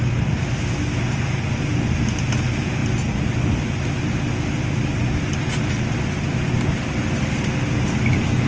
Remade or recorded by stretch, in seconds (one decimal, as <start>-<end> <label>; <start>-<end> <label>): 0.0-8.5 recorded

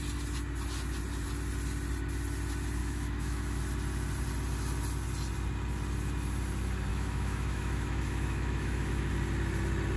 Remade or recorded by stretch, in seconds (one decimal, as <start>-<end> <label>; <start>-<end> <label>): 0.0-2.8 recorded; 2.8-3.6 remade; 3.6-6.9 recorded; 6.9-9.1 remade; 9.1-10.0 recorded

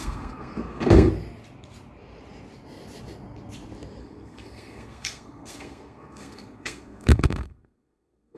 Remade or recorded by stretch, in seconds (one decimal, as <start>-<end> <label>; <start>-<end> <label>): 0.0-1.1 remade; 1.1-4.0 recorded; 4.0-8.4 remade

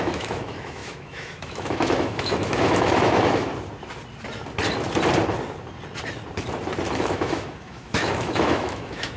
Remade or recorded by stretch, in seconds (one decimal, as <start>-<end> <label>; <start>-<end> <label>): 0.0-3.5 remade; 3.5-7.0 recorded; 7.0-9.2 remade